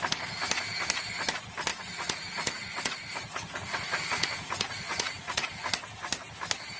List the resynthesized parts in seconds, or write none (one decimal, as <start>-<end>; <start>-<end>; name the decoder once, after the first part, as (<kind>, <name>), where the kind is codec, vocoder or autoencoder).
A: 1.7-5.5 (vocoder, Vocos)